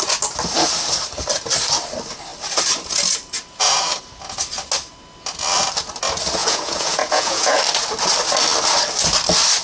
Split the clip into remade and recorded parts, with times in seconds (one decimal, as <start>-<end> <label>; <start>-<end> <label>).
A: 0.0-6.4 recorded; 6.4-7.6 remade; 7.6-9.6 recorded